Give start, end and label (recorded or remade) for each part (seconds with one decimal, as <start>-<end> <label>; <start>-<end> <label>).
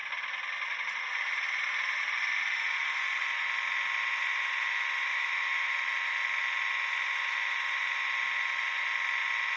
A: 0.0-5.1 recorded; 5.1-5.7 remade; 5.7-9.6 recorded